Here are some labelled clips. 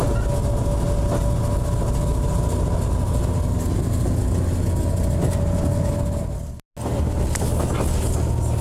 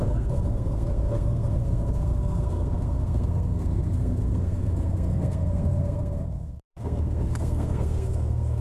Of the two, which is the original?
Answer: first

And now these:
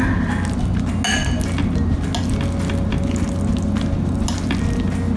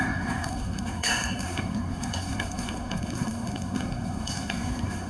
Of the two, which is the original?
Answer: first